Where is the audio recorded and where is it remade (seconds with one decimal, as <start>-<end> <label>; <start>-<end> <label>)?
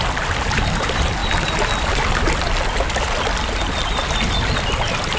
0.0-5.2 recorded